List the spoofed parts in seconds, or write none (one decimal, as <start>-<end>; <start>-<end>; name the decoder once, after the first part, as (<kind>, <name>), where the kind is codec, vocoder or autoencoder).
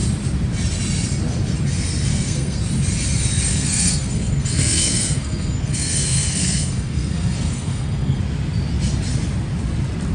2.1-2.6 (codec, SNAC); 3.5-8.2